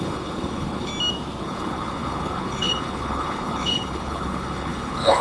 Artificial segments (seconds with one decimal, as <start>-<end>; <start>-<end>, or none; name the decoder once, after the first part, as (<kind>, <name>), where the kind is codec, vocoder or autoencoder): 0.0-0.9 (codec, HILCodec); 1.4-5.2